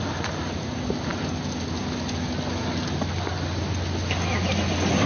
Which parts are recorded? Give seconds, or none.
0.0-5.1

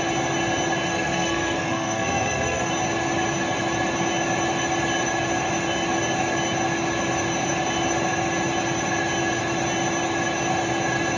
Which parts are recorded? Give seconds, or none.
0.0-0.9; 2.7-11.2

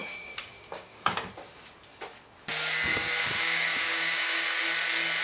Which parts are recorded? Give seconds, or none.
1.3-2.9; 4.6-5.2

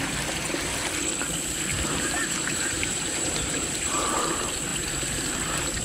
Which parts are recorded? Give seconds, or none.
0.0-1.7; 4.3-4.7

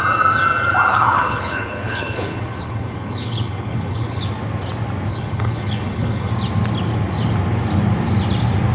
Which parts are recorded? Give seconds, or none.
0.0-0.9; 4.2-5.1; 6.3-8.7